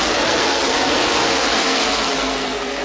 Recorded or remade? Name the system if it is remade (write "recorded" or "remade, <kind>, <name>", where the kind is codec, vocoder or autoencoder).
remade, codec, SNAC